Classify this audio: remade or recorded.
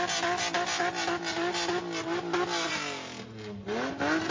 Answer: recorded